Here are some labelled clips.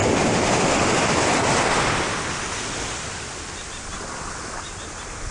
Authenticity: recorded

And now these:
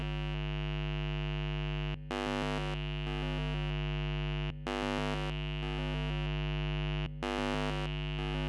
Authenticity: recorded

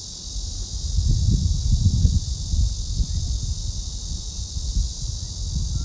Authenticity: recorded